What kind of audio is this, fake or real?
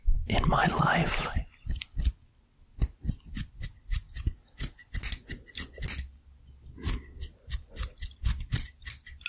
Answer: real